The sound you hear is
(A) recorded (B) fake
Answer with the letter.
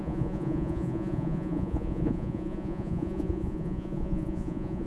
B